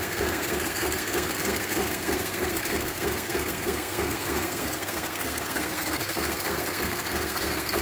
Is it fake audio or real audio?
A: fake